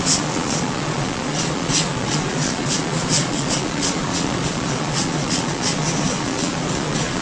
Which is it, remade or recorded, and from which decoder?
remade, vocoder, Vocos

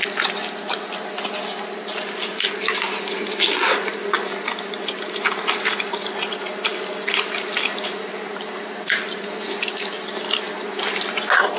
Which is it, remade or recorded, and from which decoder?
recorded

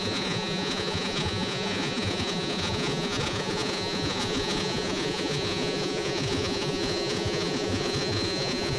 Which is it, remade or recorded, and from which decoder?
remade, vocoder, Vocos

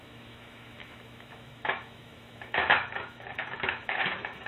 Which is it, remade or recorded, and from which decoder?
remade, autoencoder, DAC-VAE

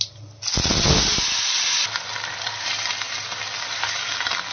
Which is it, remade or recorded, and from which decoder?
recorded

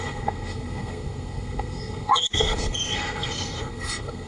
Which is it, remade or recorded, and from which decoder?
remade, codec, SNAC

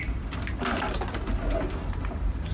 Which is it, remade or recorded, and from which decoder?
recorded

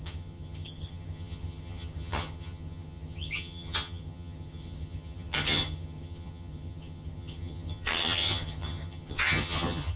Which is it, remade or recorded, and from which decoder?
remade, vocoder, HiFi-GAN